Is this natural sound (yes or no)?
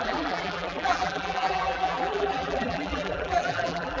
no